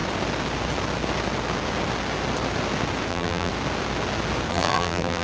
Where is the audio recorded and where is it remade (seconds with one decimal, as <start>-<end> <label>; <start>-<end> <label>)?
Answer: 0.0-3.1 recorded; 3.1-3.5 remade; 3.5-4.5 recorded; 4.5-5.2 remade